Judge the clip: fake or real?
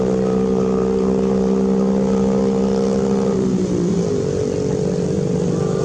real